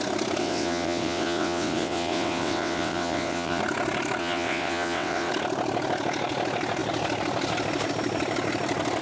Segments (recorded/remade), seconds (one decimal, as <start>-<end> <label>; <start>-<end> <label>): 0.0-0.4 recorded; 0.4-3.6 remade; 3.6-4.2 recorded; 4.2-5.3 remade; 5.3-9.0 recorded